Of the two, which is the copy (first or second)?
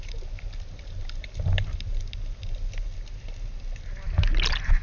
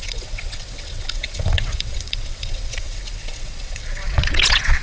second